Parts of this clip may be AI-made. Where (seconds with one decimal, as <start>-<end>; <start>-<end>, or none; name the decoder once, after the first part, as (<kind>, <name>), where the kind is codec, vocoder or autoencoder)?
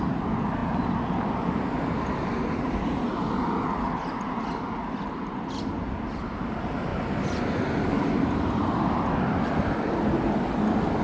none